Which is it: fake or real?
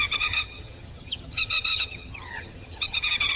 fake